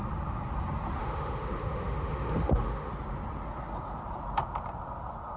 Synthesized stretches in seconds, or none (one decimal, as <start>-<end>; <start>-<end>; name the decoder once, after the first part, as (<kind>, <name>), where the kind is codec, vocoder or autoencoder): 1.0-2.9 (autoencoder, DAC-VAE)